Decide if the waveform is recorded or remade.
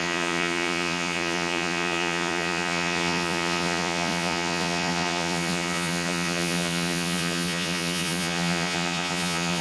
remade